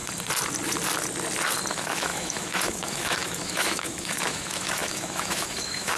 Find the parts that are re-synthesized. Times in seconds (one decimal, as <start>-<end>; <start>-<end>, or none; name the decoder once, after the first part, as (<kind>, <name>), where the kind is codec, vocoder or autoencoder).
1.7-6.0 (autoencoder, DAC-VAE)